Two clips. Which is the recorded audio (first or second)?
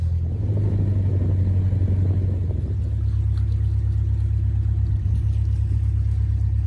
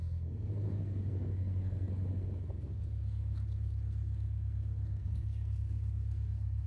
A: first